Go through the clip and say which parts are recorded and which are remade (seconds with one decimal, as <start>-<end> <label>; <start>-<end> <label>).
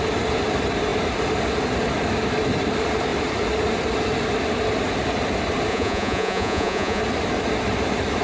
0.0-5.7 recorded; 5.7-7.0 remade; 7.0-8.2 recorded